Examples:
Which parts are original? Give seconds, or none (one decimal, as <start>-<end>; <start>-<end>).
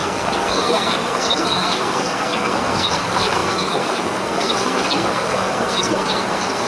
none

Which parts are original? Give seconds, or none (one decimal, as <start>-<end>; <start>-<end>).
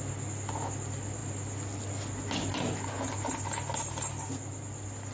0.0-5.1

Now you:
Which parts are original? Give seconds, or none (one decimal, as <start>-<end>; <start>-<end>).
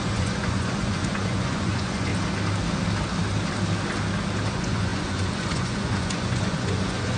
2.1-4.5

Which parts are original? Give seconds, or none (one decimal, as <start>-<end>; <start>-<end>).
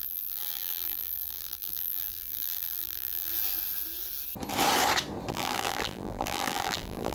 3.3-5.3